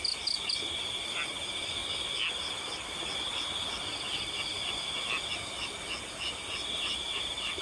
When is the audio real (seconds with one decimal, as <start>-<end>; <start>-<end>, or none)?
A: 0.0-7.6